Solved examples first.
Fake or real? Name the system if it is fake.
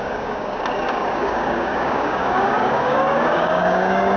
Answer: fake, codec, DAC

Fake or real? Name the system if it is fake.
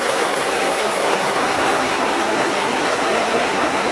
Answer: fake, codec, SNAC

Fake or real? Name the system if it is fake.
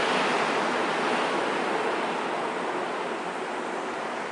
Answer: real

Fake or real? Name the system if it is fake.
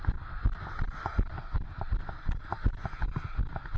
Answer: real